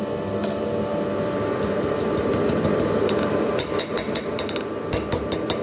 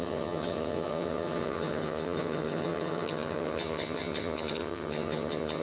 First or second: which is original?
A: first